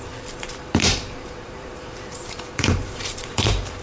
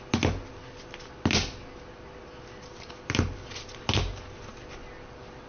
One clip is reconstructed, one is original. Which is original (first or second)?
second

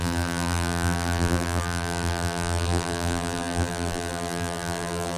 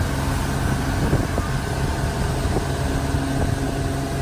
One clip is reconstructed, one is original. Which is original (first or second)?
second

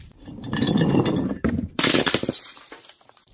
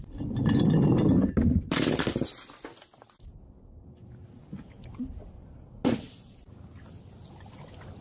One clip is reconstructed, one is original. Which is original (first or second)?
second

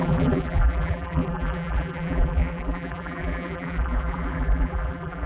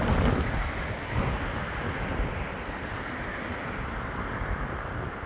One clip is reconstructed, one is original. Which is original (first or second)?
second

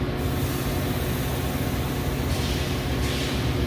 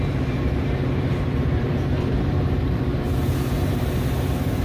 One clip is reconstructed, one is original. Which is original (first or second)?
first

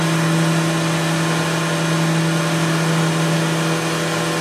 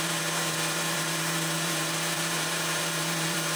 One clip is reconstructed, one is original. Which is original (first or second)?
first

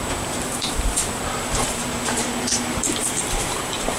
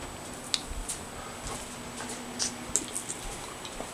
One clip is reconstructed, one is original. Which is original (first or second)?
second